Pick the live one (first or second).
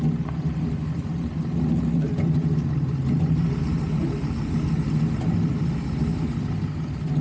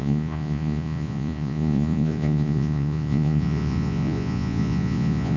first